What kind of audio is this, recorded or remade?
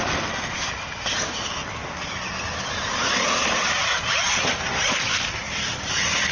recorded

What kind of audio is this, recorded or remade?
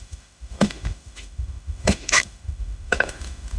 remade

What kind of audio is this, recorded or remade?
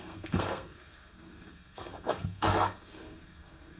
remade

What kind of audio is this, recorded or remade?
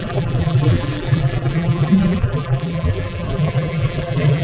remade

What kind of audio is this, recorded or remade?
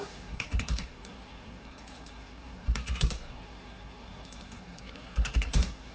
remade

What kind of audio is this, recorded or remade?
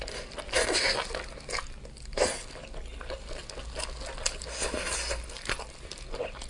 recorded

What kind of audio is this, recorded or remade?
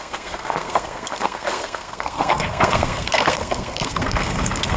remade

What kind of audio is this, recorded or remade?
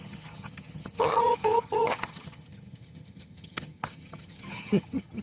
remade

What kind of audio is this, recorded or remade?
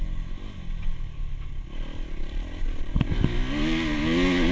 recorded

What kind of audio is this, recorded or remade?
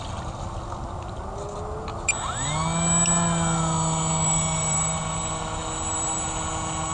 recorded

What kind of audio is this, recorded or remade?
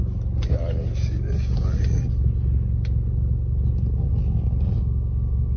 recorded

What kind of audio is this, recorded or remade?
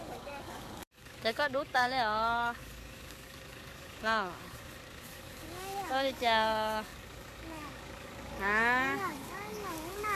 remade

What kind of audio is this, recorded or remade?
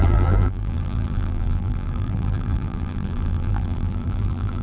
remade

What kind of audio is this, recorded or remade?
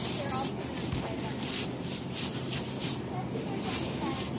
recorded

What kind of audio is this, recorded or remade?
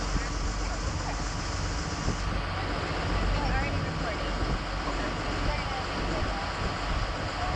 recorded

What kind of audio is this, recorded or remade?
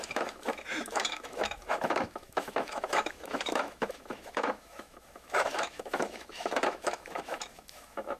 remade